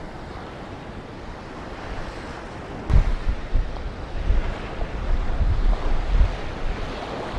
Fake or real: real